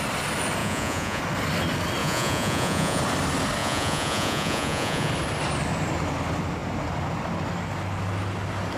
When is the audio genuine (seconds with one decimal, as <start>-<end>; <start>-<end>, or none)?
0.0-0.6; 1.2-2.0; 3.0-3.6; 5.1-8.8